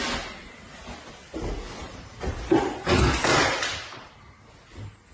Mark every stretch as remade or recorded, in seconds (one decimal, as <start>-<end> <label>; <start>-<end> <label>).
0.0-1.8 recorded; 1.8-2.6 remade; 2.6-3.3 recorded; 3.3-4.1 remade; 4.1-5.1 recorded